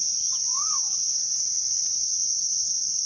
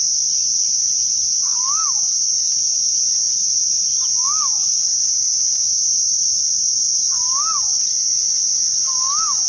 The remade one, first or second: first